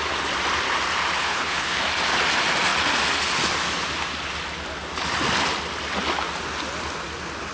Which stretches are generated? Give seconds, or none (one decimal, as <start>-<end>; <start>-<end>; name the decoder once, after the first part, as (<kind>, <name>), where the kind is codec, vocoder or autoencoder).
1.2-1.8 (codec, HILCodec)